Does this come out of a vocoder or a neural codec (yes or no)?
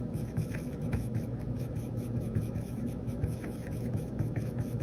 yes